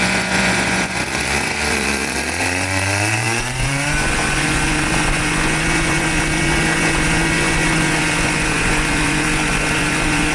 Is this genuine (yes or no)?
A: no